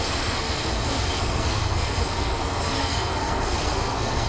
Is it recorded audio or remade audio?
remade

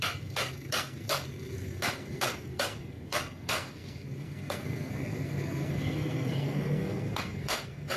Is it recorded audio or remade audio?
remade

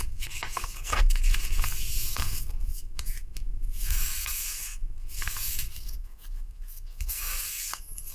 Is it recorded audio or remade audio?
remade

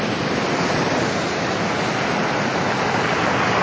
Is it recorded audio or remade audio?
recorded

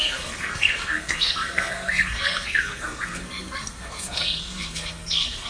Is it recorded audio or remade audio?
remade